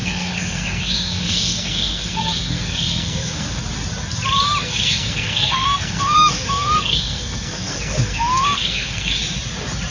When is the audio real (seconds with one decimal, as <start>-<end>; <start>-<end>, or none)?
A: 3.6-4.6; 9.2-9.9